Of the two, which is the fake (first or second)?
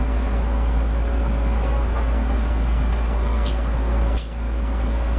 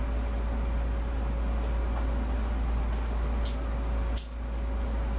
first